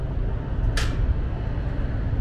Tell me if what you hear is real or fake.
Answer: real